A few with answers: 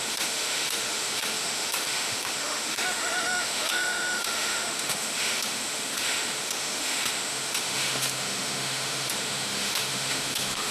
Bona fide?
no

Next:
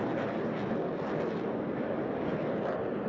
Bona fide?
yes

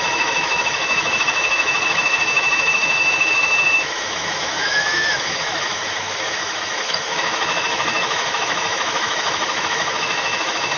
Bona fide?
no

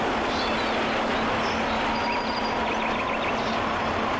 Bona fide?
yes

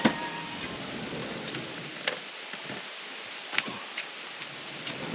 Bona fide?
yes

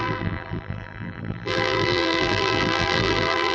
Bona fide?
no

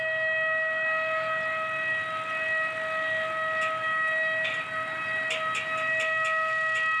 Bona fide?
yes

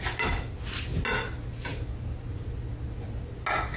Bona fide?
yes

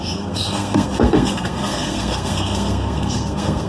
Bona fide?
no